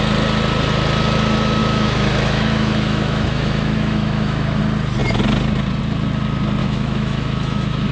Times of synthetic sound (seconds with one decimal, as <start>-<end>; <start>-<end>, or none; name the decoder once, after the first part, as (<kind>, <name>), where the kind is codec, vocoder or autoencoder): 1.6-4.6 (autoencoder, DAC-VAE); 6.6-7.9